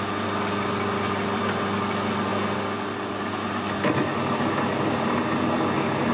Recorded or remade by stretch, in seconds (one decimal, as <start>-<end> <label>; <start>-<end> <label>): 0.0-6.1 recorded